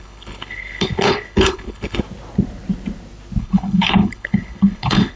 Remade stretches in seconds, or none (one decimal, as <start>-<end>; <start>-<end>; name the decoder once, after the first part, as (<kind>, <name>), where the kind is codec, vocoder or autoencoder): 0.0-2.0 (codec, HILCodec); 3.4-5.2